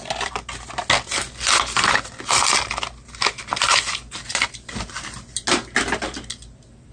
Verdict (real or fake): real